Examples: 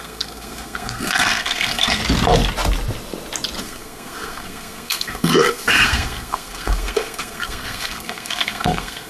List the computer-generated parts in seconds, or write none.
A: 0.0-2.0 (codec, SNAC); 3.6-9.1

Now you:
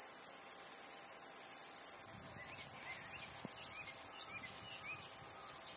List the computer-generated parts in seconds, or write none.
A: none

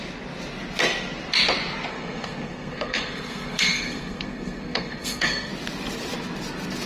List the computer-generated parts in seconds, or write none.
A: 1.9-5.5 (codec, SNAC)